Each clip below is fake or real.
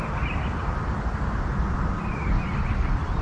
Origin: real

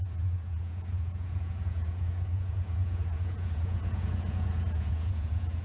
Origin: fake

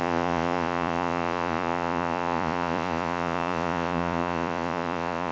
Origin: fake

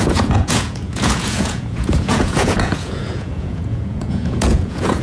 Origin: fake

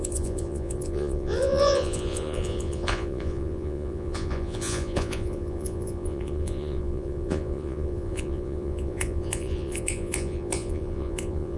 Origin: fake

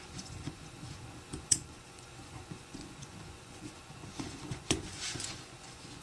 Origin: fake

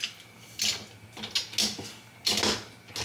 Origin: real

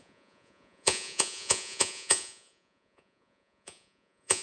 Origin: fake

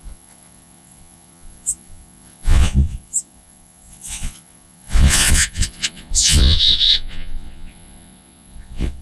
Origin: fake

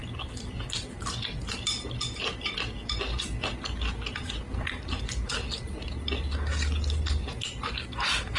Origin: real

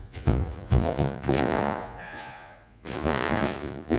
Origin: fake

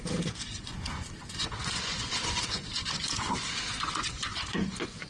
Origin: fake